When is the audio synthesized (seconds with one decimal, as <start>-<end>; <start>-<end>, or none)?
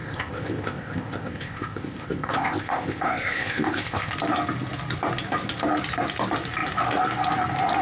0.0-4.1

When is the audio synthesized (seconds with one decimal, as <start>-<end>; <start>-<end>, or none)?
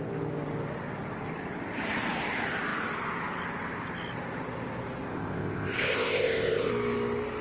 5.1-6.7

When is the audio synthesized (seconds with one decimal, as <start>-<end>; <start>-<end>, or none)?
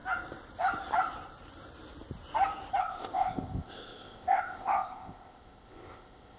2.8-6.4